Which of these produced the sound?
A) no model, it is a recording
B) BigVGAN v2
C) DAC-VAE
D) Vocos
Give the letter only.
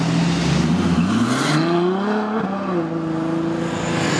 A